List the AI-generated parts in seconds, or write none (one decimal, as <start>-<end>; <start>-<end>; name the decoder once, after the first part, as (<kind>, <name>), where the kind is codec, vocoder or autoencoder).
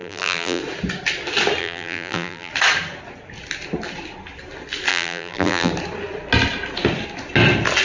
0.0-0.6 (vocoder, BigVGAN v2); 1.6-2.5; 4.9-5.7